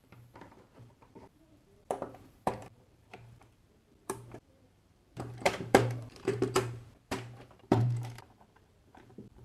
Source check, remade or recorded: remade